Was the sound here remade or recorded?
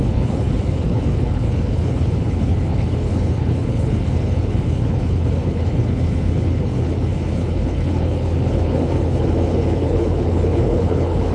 remade